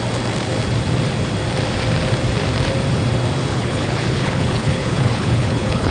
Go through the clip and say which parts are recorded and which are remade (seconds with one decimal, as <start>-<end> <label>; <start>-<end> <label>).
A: 0.0-3.5 recorded; 3.5-5.9 remade